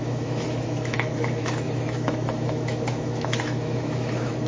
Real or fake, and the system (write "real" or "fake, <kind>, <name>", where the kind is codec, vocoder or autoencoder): fake, autoencoder, DAC-VAE